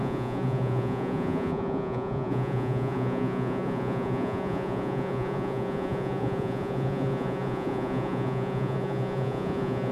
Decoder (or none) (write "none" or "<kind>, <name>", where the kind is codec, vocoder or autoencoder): vocoder, Vocos